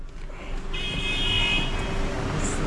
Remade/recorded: recorded